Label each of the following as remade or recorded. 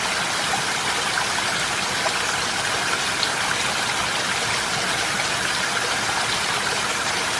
recorded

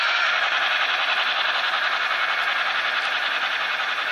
recorded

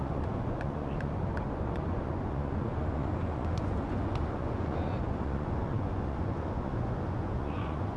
remade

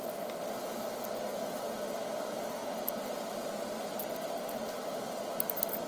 recorded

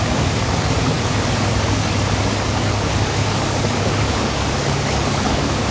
remade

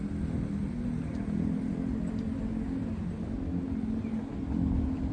recorded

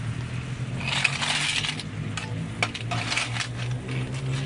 recorded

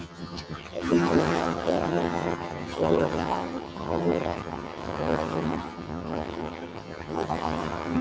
remade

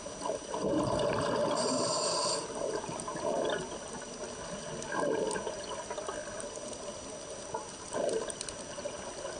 recorded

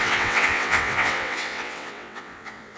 remade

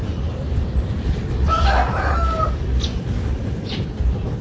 recorded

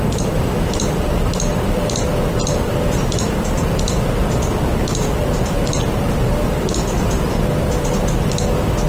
recorded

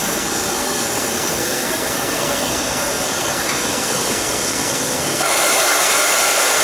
remade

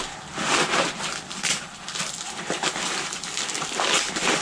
recorded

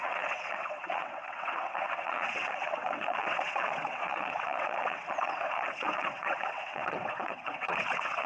remade